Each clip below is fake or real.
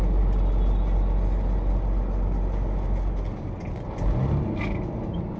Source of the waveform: real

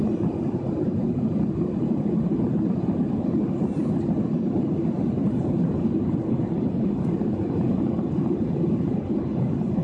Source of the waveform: real